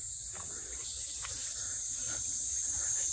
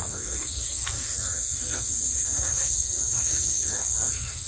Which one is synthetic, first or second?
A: second